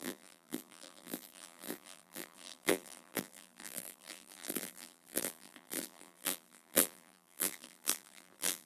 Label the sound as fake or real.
fake